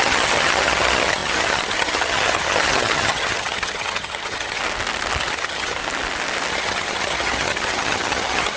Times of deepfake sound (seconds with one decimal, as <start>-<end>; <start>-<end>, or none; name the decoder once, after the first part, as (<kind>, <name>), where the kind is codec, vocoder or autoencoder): 0.0-4.6 (vocoder, HiFi-GAN); 5.2-5.8; 6.5-8.6

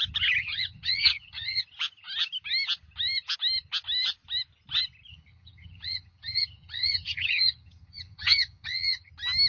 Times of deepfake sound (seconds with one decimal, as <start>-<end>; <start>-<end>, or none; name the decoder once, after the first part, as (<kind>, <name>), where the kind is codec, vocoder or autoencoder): 0.4-1.6 (vocoder, HiFi-GAN); 5.1-9.1

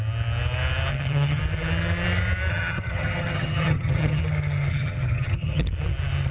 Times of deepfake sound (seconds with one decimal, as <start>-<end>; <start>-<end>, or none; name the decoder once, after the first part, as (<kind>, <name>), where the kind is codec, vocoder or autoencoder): 0.9-1.4 (vocoder, HiFi-GAN); 2.5-4.2; 4.7-5.6